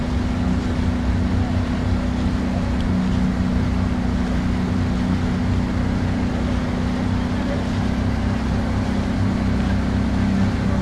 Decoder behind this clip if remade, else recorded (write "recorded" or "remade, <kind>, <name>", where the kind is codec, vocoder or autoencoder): recorded